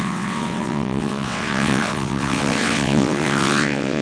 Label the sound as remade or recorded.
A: remade